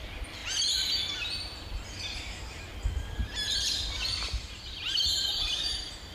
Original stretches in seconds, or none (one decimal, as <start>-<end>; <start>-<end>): 0.0-4.4; 5.3-6.1